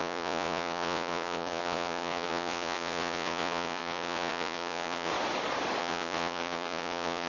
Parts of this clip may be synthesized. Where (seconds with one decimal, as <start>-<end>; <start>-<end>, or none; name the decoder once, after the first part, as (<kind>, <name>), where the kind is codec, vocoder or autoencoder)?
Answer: 0.0-5.1 (vocoder, Vocos); 5.8-7.3